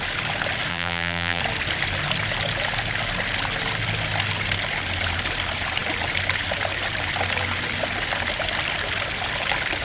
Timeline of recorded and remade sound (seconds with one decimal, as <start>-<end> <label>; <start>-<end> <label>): 0.0-0.7 recorded; 0.7-1.4 remade; 1.4-9.8 recorded